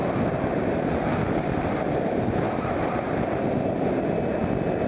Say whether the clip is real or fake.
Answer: real